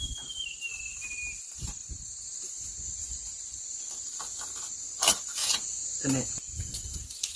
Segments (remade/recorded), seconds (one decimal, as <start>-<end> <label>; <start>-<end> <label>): 0.0-5.4 recorded; 5.4-7.0 remade; 7.0-7.4 recorded